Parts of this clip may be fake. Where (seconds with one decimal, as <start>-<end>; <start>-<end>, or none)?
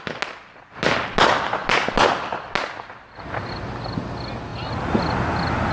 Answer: none